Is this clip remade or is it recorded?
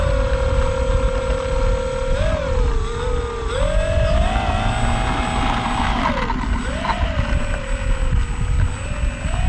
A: recorded